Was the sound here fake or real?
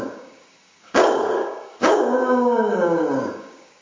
fake